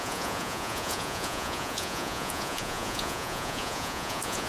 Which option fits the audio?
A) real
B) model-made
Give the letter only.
B